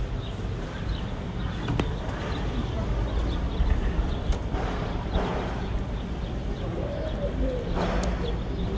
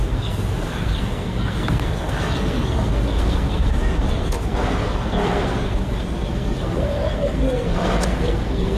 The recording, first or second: first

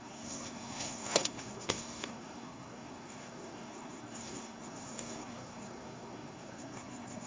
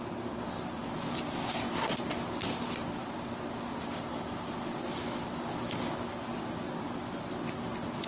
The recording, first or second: second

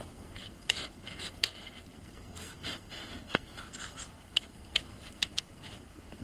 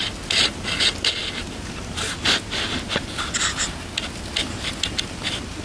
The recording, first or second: second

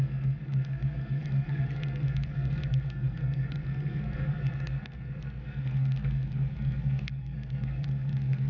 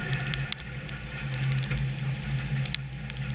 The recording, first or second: second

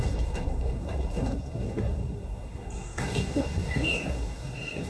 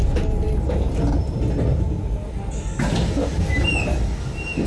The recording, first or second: second